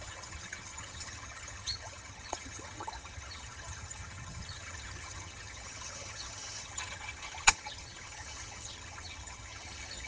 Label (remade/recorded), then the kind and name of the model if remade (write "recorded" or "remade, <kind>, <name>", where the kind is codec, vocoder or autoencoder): remade, vocoder, HiFi-GAN